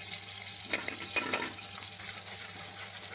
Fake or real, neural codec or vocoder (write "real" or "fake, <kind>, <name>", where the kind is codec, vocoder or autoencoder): real